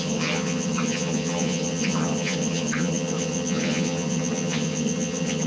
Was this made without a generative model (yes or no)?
no